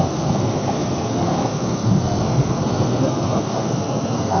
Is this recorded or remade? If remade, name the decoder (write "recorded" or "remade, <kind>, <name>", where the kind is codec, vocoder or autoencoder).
remade, codec, SNAC